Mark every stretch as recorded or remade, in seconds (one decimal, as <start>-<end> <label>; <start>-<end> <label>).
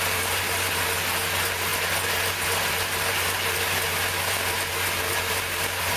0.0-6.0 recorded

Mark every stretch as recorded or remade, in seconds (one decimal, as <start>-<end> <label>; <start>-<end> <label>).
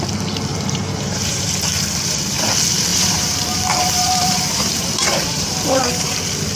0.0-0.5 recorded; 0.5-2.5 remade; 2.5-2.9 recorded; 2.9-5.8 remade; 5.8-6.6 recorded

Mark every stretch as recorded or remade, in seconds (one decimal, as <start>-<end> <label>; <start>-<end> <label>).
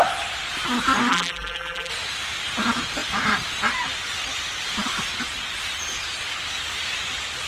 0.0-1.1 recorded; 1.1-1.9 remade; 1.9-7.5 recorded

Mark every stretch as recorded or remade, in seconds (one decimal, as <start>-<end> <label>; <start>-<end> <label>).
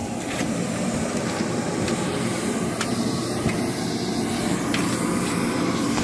0.0-3.6 remade; 3.6-6.0 recorded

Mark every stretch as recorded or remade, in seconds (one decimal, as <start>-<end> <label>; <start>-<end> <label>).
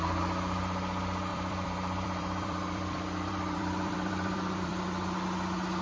0.0-1.3 recorded; 1.3-4.8 remade; 4.8-5.8 recorded